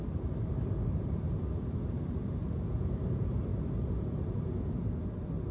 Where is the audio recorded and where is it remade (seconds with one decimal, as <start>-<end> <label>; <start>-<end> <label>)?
0.0-5.5 recorded